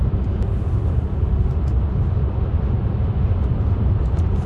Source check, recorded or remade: recorded